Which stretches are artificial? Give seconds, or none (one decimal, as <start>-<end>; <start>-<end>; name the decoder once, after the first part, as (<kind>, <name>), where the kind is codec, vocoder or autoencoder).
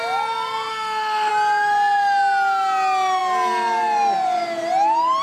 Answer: 0.7-1.3 (autoencoder, DAC-VAE)